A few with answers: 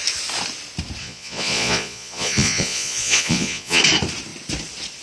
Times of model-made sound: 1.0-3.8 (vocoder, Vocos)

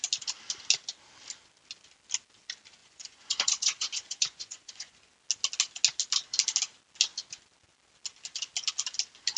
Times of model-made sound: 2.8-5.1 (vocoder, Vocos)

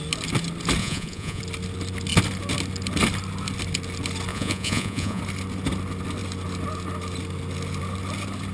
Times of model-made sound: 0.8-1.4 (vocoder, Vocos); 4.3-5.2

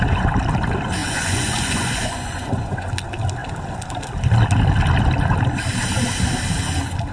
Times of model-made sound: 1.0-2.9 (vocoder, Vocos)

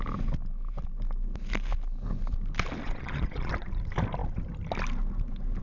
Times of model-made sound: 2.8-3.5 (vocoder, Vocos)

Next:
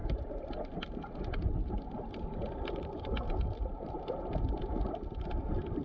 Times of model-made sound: none